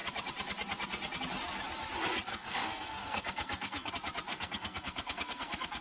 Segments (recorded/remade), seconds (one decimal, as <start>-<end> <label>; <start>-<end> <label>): 0.0-2.3 recorded; 2.3-3.9 remade; 3.9-4.3 recorded; 4.3-5.8 remade